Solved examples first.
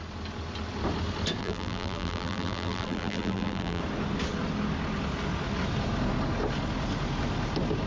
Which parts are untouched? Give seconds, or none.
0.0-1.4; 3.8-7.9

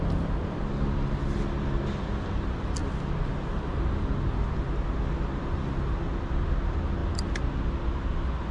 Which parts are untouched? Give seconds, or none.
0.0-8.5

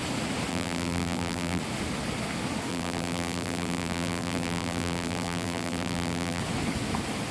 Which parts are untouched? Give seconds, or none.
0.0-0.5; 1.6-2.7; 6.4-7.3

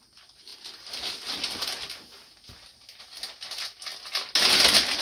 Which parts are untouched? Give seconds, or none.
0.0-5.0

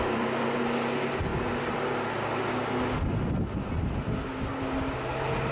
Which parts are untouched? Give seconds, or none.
0.6-5.5

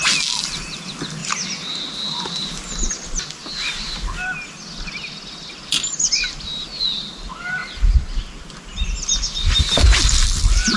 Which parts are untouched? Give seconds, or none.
0.0-7.6; 8.4-10.8

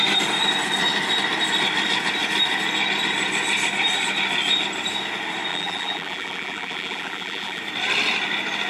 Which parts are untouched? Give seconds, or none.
0.0-5.5; 7.6-8.7